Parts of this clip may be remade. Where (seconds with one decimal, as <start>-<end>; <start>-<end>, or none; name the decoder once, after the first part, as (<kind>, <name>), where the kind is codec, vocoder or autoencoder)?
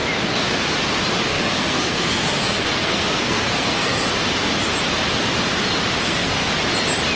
1.3-4.1 (codec, SNAC); 6.0-6.5